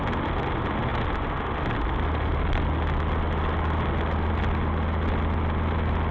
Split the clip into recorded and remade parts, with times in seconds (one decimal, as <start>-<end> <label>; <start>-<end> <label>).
0.0-0.9 recorded; 0.9-4.3 remade; 4.3-6.1 recorded